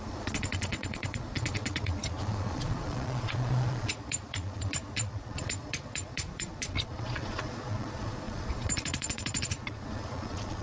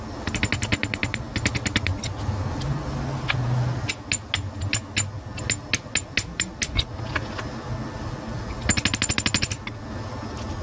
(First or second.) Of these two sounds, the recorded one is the second